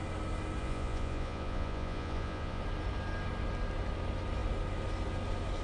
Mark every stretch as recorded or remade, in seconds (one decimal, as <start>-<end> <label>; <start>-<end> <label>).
0.0-0.6 recorded; 0.6-2.6 remade; 2.6-5.6 recorded